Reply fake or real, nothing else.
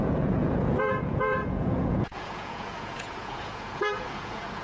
fake